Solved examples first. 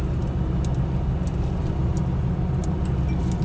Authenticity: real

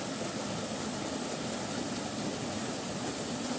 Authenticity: real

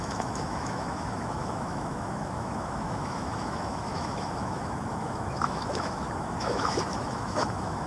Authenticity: fake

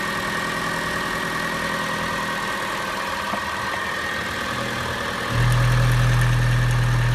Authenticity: real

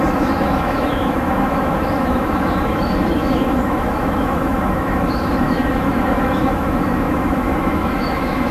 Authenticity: fake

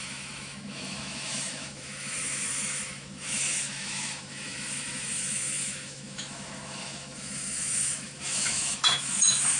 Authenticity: fake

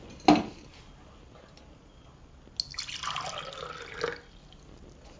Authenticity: real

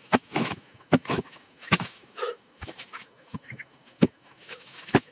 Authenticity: fake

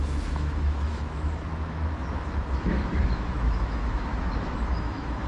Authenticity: fake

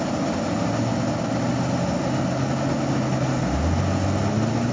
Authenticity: real